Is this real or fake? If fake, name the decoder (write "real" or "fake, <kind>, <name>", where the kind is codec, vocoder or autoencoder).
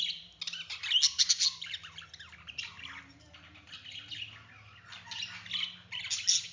real